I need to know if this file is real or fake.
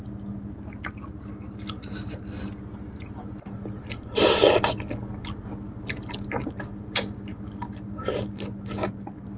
real